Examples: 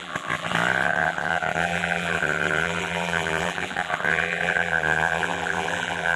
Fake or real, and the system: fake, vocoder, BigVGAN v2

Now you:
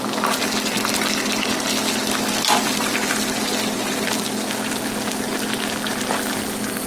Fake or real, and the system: real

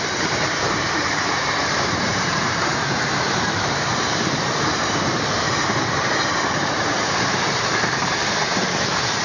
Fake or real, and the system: fake, vocoder, BigVGAN v2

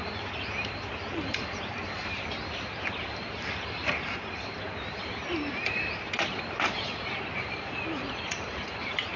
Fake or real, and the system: fake, vocoder, BigVGAN v2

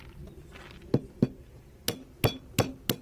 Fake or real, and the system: real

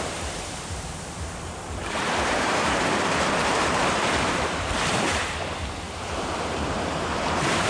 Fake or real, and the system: fake, vocoder, BigVGAN v2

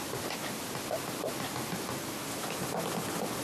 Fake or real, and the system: real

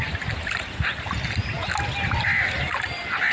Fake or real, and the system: real